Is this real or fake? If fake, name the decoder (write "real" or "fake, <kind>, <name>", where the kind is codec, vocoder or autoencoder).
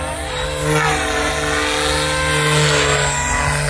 real